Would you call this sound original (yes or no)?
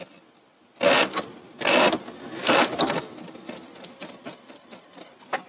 yes